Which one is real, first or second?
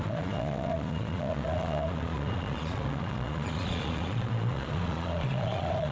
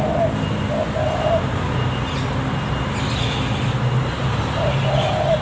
second